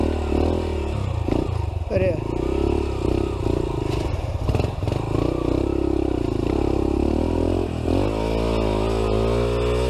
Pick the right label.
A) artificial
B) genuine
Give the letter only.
B